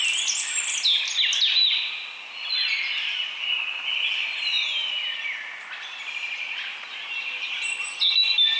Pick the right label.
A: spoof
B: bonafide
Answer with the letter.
B